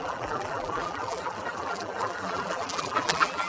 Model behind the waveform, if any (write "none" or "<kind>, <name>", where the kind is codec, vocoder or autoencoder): vocoder, BigVGAN v2